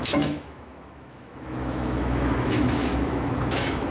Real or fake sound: fake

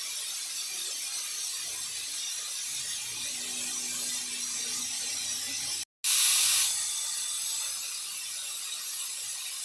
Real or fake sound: real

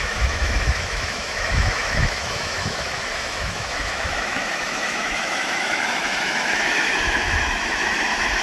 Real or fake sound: fake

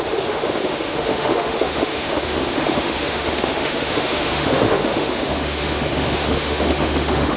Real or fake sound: fake